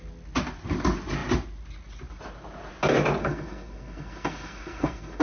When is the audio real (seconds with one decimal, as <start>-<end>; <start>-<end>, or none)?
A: 0.0-3.2